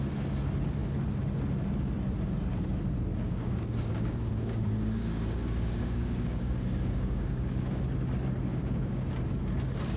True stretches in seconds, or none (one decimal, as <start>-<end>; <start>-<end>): 0.0-3.1; 7.8-8.5; 9.4-10.0